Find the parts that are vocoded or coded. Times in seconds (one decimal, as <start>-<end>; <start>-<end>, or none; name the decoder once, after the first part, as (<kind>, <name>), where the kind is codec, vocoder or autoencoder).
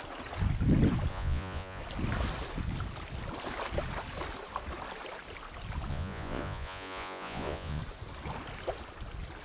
1.1-1.8 (vocoder, Vocos); 5.9-7.8